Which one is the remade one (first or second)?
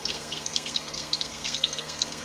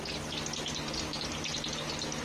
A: first